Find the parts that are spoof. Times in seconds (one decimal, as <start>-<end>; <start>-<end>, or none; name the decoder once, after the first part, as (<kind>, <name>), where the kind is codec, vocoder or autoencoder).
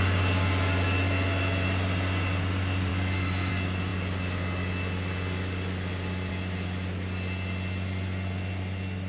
2.9-3.5 (autoencoder, DAC-VAE)